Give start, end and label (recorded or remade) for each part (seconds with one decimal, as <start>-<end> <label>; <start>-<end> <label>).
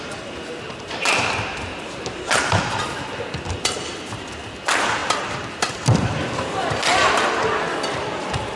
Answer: 0.0-5.0 recorded; 5.0-8.2 remade; 8.2-8.6 recorded